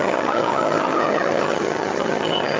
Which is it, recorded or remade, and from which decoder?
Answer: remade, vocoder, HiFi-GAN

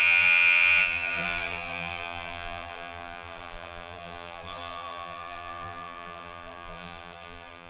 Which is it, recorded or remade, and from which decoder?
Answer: remade, vocoder, BigVGAN v2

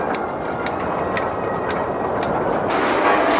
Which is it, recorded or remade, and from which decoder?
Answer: recorded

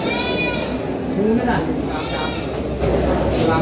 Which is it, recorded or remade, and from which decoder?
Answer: recorded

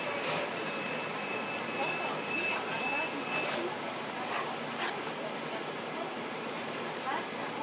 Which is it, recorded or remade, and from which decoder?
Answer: recorded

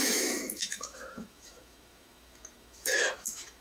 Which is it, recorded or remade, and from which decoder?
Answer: remade, autoencoder, DAC-VAE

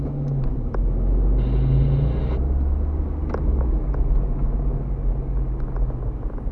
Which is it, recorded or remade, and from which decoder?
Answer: recorded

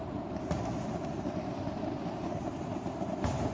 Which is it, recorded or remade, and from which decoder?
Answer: remade, vocoder, BigVGAN v2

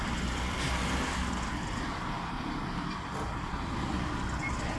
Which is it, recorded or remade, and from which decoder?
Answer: recorded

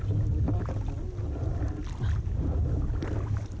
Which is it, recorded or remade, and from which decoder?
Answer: recorded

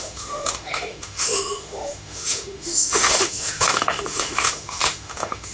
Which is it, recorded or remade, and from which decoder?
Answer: remade, autoencoder, DAC-VAE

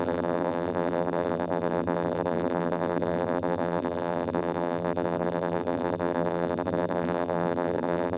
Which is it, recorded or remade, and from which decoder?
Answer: remade, vocoder, BigVGAN v2